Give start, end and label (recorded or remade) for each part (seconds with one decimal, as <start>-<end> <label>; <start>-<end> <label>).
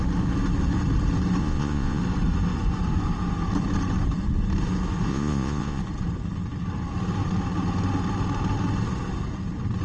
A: 0.0-1.4 recorded; 1.4-2.0 remade; 2.0-5.1 recorded; 5.1-5.8 remade; 5.8-9.8 recorded